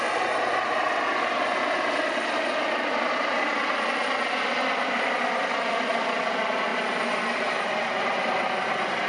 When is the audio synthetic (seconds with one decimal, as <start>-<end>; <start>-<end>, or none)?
6.7-7.5